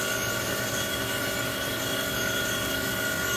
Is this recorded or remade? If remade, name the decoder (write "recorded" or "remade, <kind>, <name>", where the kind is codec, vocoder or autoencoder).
remade, codec, DAC